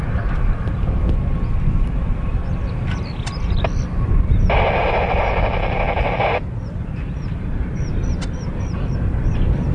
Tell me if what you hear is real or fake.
real